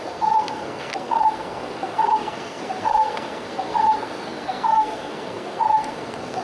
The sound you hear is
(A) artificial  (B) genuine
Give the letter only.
A